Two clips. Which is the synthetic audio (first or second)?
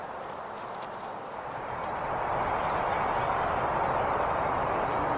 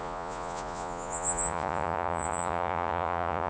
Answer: second